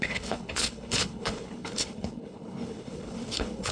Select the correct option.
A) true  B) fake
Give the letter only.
B